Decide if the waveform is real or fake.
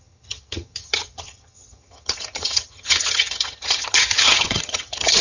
fake